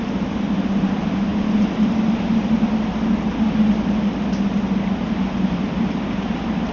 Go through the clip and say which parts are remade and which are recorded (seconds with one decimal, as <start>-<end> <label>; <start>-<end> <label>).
0.0-6.7 recorded